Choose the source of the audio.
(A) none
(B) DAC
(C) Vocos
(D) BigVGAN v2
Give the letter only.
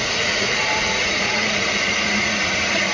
C